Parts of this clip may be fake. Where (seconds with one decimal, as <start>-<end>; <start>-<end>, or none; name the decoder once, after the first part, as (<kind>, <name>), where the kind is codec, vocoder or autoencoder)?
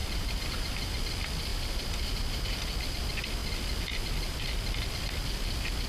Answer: 0.0-0.9 (vocoder, BigVGAN v2); 1.5-2.4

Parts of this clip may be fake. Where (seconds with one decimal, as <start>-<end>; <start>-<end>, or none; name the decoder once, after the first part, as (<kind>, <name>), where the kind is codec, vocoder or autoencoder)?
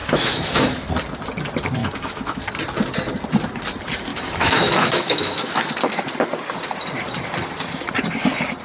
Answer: 0.0-0.9 (autoencoder, DAC-VAE); 1.8-2.4; 4.1-5.7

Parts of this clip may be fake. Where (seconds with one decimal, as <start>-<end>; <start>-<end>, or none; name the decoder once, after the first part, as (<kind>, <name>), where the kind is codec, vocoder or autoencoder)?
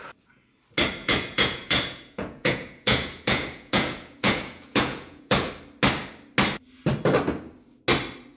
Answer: 1.0-5.5 (vocoder, Vocos)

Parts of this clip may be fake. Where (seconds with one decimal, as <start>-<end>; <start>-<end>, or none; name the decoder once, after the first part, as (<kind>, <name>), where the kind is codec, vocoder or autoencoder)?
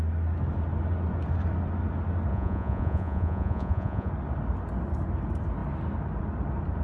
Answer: 2.3-4.1 (vocoder, Vocos)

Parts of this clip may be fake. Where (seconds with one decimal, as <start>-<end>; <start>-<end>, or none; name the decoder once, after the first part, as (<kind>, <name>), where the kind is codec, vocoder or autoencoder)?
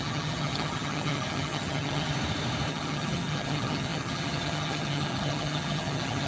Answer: 0.0-2.1 (vocoder, HiFi-GAN); 2.7-6.3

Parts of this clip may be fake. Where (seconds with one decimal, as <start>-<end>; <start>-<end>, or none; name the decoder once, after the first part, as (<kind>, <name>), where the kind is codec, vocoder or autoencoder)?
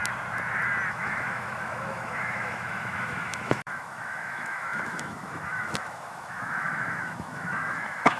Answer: 0.9-8.2 (autoencoder, DAC-VAE)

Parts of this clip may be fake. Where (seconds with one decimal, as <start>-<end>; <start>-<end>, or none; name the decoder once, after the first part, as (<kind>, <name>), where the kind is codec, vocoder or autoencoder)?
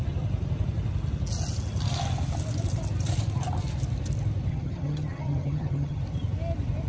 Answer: 4.5-6.0 (vocoder, HiFi-GAN)